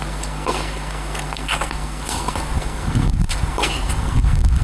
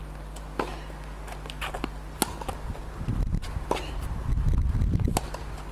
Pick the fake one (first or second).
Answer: first